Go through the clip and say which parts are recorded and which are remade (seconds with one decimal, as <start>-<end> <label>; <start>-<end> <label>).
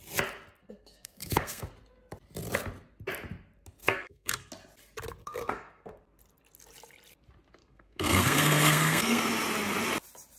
0.0-0.6 recorded; 0.6-1.7 remade; 1.7-3.8 recorded; 3.8-4.5 remade; 4.5-5.2 recorded; 5.2-6.0 remade; 6.0-7.6 recorded; 7.6-9.2 remade; 9.2-10.4 recorded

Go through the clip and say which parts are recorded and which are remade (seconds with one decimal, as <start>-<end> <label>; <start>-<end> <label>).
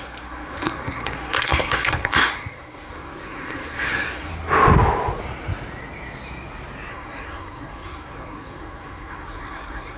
0.0-4.3 remade; 4.3-6.9 recorded; 6.9-10.0 remade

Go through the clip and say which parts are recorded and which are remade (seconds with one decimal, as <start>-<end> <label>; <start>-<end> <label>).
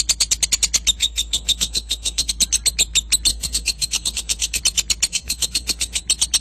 0.0-1.0 recorded; 1.0-2.3 remade; 2.3-3.3 recorded; 3.3-4.6 remade; 4.6-5.1 recorded; 5.1-6.0 remade; 6.0-6.4 recorded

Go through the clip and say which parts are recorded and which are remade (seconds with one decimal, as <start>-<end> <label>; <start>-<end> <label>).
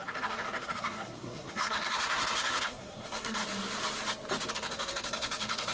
0.0-3.4 remade; 3.4-4.5 recorded; 4.5-5.7 remade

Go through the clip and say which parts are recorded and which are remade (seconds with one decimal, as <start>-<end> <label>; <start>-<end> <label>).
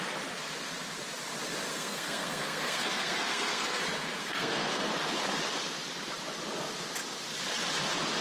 0.0-1.7 recorded; 1.7-3.8 remade; 3.8-4.2 recorded; 4.2-4.9 remade; 4.9-8.2 recorded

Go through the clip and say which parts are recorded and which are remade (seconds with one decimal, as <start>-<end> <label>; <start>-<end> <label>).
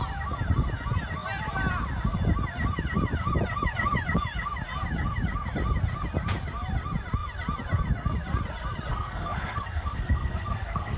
0.0-8.9 recorded; 8.9-11.0 remade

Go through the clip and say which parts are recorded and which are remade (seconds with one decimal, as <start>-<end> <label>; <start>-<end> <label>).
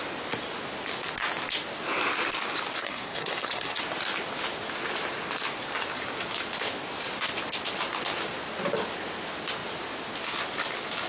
0.0-2.8 recorded; 2.8-3.8 remade; 3.8-11.1 recorded